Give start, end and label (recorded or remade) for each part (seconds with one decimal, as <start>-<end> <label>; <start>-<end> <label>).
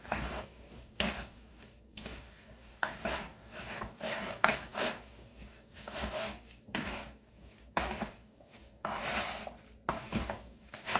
0.0-9.0 remade; 9.0-9.9 recorded; 9.9-11.0 remade